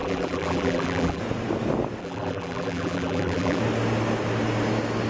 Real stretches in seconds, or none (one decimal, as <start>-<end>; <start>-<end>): 1.2-2.0; 3.6-5.1